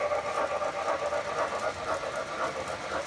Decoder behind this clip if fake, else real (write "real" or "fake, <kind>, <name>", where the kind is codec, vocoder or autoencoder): real